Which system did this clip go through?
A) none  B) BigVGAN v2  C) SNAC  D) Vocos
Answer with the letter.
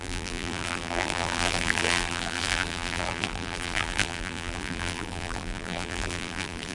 B